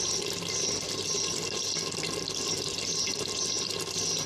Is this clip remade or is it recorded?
recorded